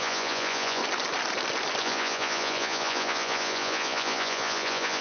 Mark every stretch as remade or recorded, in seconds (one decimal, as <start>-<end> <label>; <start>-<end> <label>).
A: 0.0-0.8 remade; 0.8-1.8 recorded; 1.8-5.0 remade